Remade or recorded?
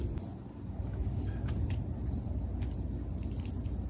recorded